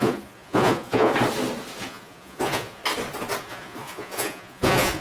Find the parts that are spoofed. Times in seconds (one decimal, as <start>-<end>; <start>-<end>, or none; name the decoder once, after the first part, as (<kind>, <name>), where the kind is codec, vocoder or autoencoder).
0.0-1.1 (vocoder, Vocos); 1.8-2.8; 3.4-5.0